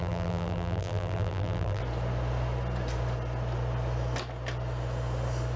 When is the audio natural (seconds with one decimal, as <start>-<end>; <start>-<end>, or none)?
1.8-5.6